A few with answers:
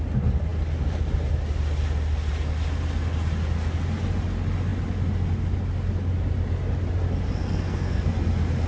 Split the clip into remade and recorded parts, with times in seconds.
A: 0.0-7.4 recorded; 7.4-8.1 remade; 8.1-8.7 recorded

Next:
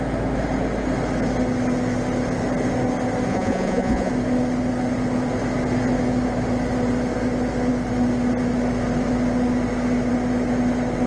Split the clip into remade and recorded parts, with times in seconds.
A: 0.0-3.3 recorded; 3.3-4.1 remade; 4.1-11.1 recorded